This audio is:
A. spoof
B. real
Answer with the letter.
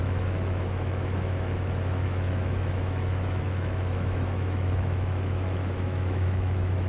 A